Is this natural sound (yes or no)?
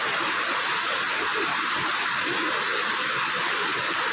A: yes